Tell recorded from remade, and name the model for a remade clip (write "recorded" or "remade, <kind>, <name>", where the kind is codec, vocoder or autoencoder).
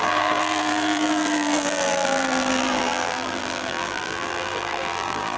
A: remade, vocoder, BigVGAN v2